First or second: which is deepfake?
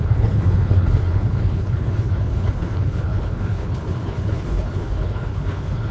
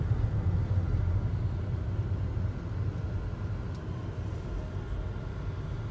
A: first